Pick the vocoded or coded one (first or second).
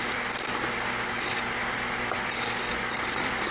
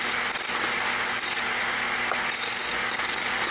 first